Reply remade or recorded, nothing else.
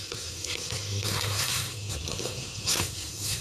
remade